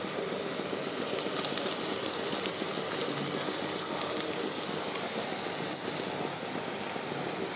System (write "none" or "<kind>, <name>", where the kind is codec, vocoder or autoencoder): none